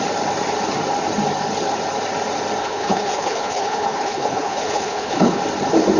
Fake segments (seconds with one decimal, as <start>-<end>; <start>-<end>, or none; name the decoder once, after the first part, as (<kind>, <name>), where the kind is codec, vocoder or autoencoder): 2.6-5.4 (codec, HILCodec)